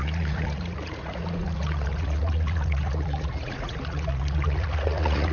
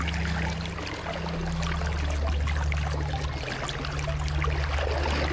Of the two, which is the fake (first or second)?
first